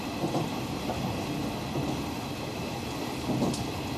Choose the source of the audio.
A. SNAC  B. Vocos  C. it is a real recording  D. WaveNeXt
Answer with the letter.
C